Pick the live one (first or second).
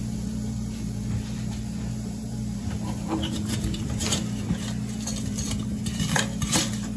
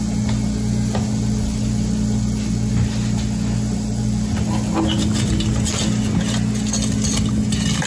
second